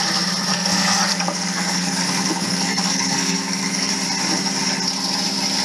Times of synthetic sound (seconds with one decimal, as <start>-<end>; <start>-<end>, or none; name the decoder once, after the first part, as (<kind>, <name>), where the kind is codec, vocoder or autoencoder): 0.5-3.9 (codec, SNAC)